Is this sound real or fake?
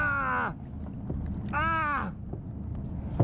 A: real